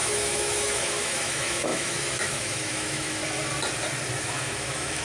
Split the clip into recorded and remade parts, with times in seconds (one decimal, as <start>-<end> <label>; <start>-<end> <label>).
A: 0.0-3.2 remade; 3.2-4.2 recorded; 4.2-5.0 remade